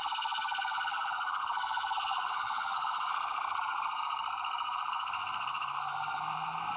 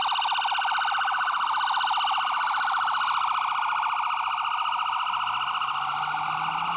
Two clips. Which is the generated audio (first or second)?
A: first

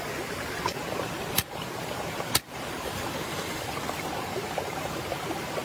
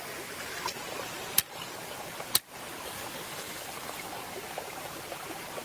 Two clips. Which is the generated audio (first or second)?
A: first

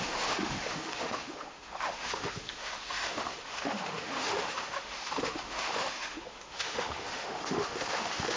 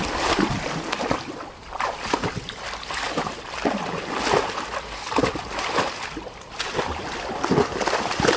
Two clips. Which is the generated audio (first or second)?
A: first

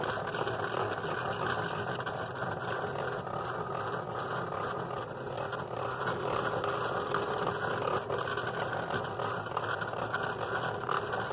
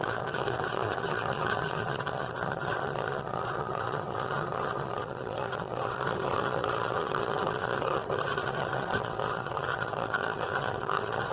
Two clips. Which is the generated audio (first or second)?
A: second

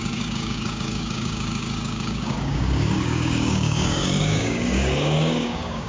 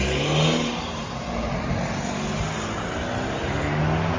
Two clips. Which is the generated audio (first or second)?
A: first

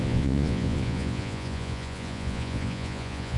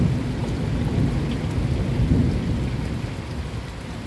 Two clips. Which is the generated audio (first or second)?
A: first